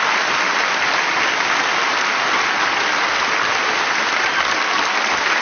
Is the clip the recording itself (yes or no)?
yes